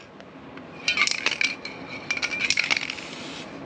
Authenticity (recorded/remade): recorded